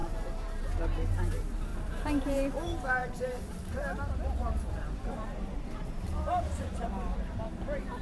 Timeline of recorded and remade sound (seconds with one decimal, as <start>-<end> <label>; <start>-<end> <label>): 0.0-0.6 remade; 0.6-1.7 recorded; 1.7-2.5 remade; 2.5-3.0 recorded; 3.0-8.0 remade